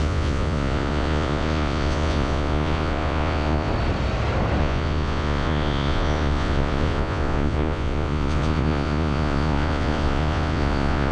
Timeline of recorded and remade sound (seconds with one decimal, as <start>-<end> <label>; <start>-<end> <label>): 0.0-3.7 remade; 3.7-4.6 recorded; 4.6-11.1 remade